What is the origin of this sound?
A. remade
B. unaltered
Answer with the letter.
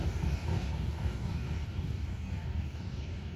A